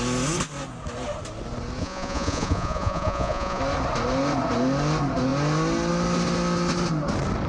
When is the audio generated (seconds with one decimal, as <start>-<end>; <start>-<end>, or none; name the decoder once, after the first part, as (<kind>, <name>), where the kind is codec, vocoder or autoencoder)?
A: 1.8-3.6 (vocoder, Vocos)

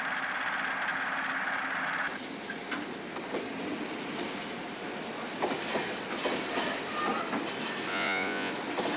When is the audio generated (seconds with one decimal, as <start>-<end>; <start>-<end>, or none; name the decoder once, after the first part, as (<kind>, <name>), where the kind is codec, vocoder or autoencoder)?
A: 7.9-8.5 (vocoder, Vocos)